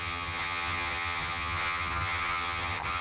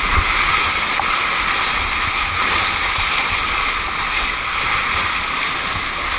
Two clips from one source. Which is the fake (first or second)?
first